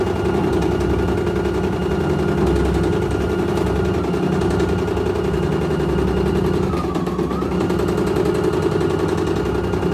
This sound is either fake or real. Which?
real